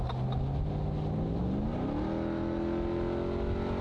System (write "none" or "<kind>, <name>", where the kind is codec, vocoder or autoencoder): none